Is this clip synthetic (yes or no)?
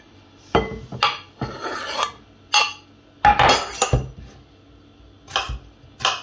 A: no